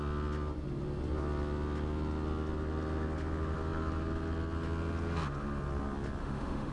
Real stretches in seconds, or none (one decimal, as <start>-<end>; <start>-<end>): 0.0-6.2